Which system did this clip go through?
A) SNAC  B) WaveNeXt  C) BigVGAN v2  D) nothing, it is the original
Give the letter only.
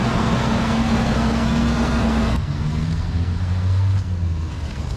A